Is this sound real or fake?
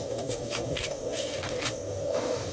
fake